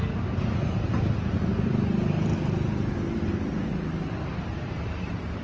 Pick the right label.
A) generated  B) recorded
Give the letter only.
B